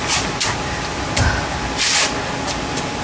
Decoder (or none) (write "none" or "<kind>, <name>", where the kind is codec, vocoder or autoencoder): none